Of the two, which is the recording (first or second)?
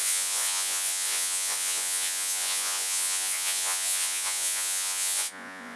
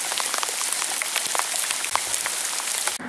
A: second